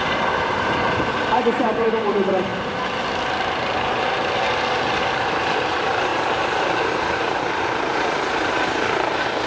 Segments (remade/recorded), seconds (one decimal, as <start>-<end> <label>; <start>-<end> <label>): 0.0-2.5 remade; 2.5-5.0 recorded; 5.0-9.5 remade